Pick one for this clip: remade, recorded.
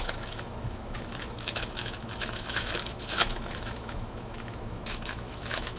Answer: remade